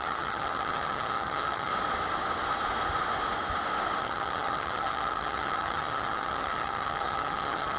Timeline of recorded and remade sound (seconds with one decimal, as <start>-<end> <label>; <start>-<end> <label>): 0.0-1.7 remade; 1.7-4.0 recorded; 4.0-7.8 remade